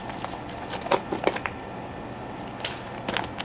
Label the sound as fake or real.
real